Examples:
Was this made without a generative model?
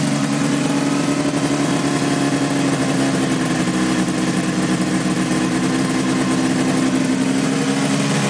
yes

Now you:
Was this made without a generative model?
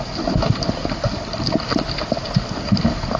yes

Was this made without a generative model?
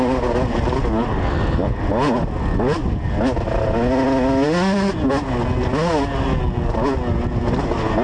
yes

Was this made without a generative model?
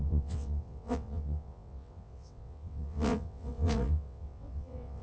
no